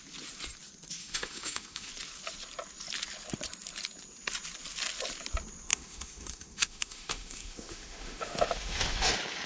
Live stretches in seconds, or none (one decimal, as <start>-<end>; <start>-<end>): 0.0-1.0; 1.9-5.7; 9.1-9.5